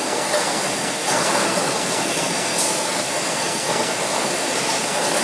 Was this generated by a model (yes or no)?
yes